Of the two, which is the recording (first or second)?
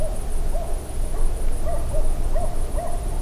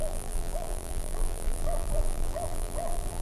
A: first